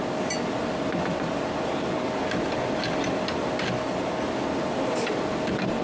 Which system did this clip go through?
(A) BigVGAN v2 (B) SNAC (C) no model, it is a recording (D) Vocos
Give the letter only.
C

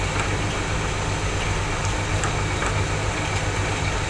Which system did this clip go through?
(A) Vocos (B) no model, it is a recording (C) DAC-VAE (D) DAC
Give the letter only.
B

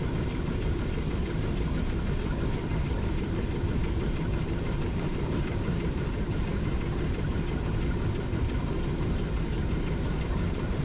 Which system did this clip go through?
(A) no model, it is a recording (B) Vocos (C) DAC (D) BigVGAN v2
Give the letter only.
D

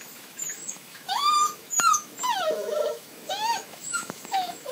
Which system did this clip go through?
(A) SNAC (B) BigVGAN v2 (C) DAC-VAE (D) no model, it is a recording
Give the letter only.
C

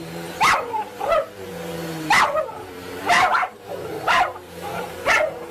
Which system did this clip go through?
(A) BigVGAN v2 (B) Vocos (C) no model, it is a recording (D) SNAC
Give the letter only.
A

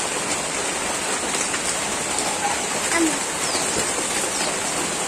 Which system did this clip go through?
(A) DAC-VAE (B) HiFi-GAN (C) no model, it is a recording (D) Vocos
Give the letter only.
C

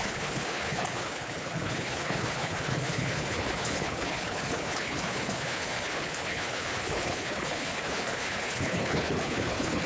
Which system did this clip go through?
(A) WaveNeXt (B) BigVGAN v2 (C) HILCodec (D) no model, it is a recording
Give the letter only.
C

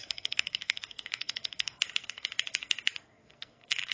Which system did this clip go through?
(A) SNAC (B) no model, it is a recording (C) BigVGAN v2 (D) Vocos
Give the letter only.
A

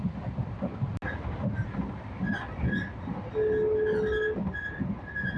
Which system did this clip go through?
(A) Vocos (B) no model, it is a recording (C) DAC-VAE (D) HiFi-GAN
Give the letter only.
B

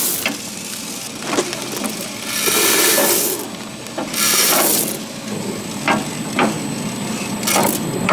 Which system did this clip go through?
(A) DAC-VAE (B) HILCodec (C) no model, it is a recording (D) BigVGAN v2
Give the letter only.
C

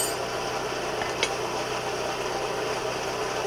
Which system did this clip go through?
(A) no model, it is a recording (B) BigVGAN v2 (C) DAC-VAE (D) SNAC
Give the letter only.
A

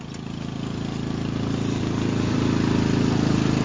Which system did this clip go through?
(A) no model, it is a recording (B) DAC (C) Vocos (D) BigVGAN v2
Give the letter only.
A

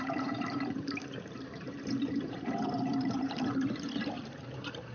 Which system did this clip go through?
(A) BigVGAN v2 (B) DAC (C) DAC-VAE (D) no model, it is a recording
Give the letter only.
A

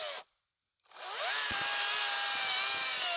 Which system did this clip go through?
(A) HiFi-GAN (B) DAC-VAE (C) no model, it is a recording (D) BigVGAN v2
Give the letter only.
C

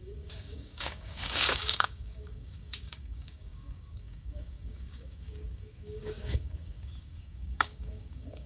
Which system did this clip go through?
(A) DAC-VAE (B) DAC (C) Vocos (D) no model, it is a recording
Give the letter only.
B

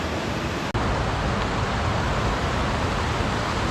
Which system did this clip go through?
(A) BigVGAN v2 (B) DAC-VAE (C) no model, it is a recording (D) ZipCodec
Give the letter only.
C